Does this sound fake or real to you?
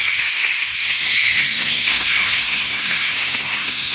fake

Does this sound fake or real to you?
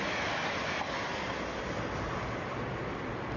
real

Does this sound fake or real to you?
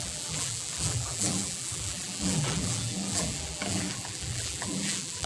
fake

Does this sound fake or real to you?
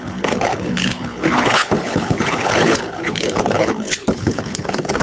fake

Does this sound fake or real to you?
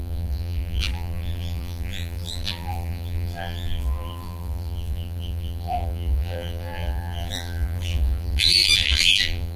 fake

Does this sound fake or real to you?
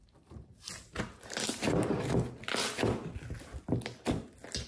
real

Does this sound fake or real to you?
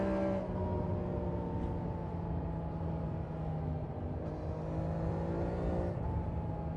real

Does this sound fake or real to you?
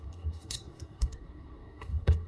fake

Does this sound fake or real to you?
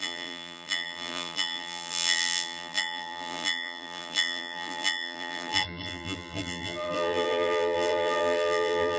fake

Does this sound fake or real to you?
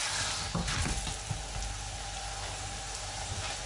real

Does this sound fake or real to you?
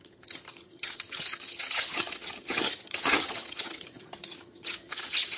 fake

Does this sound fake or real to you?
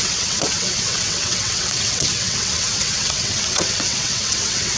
fake